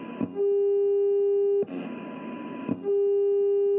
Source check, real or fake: real